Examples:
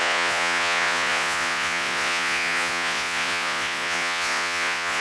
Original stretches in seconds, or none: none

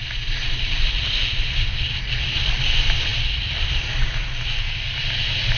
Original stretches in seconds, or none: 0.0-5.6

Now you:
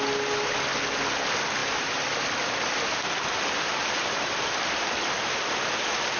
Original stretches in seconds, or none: 0.0-6.2

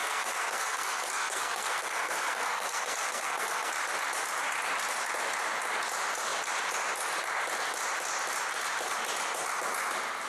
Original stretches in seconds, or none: 3.7-10.3

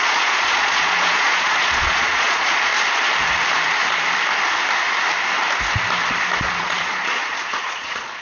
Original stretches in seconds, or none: 2.7-6.4